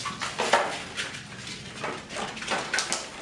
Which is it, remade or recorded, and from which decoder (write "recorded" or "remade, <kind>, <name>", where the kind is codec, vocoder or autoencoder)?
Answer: recorded